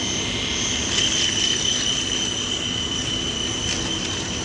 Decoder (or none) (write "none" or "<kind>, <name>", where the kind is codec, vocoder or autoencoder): none